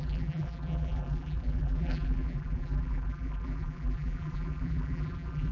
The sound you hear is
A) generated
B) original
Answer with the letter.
A